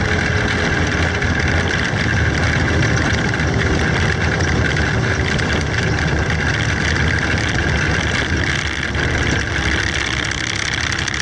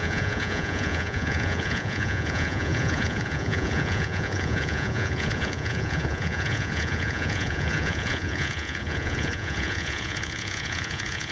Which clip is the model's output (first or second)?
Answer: second